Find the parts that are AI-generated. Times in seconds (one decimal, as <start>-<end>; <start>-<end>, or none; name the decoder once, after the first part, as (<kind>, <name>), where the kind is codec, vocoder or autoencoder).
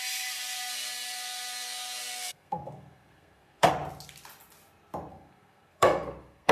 2.0-3.7 (codec, SNAC); 5.1-6.5